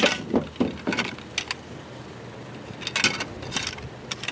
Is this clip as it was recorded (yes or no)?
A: yes